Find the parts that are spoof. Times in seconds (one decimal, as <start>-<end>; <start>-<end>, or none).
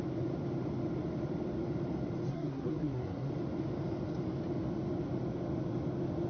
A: 2.3-3.3